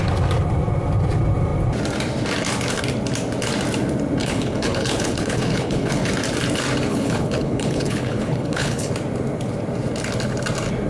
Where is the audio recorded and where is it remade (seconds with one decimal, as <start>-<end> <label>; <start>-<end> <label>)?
0.0-4.2 recorded; 4.2-6.1 remade; 6.1-6.9 recorded; 6.9-8.9 remade; 8.9-10.9 recorded